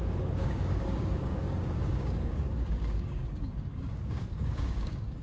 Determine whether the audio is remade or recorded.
remade